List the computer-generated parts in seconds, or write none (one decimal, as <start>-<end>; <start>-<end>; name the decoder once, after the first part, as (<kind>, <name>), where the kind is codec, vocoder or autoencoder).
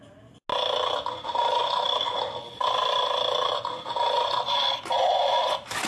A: none